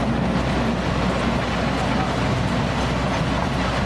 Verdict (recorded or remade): recorded